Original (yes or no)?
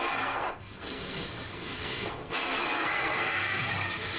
no